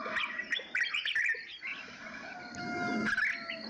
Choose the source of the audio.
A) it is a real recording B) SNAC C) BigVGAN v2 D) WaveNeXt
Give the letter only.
A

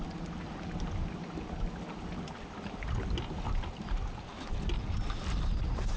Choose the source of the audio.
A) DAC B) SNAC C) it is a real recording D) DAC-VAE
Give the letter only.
C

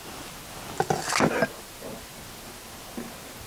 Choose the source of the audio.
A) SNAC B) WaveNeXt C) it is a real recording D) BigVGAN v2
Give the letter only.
C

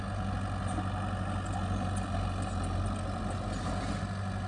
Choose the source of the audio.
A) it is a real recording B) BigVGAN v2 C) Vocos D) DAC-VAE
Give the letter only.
A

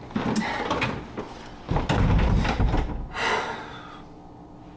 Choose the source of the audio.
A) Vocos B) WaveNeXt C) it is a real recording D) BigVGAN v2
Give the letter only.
C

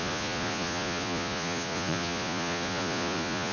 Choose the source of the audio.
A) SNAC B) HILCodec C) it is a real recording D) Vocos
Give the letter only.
D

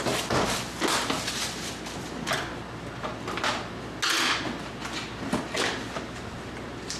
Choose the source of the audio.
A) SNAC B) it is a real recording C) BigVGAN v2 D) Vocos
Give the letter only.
B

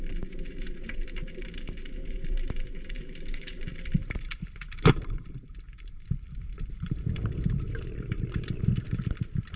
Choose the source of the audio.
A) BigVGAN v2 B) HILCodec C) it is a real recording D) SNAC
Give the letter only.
A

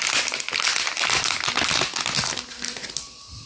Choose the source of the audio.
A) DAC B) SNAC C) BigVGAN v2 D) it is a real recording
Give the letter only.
D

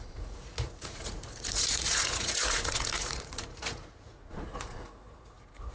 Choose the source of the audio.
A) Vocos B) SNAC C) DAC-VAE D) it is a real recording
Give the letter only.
A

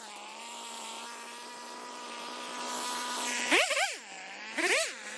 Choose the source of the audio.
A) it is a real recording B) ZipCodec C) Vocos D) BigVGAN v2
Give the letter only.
D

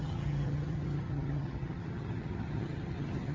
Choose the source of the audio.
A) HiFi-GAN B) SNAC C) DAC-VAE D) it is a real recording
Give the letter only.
A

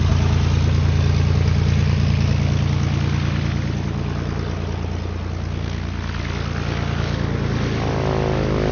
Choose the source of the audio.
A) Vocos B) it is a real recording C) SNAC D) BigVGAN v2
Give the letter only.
B